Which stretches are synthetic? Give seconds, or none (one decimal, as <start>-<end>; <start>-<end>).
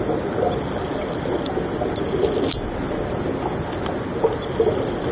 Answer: none